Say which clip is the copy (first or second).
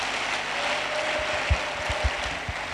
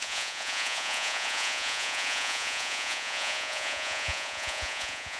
second